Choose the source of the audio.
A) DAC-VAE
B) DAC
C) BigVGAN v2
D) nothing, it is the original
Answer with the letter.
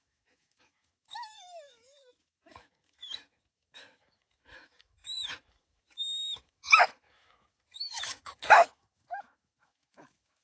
A